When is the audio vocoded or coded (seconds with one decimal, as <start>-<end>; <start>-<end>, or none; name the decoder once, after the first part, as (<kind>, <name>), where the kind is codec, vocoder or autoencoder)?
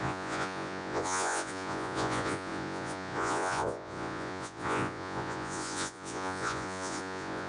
0.0-7.5 (vocoder, Vocos)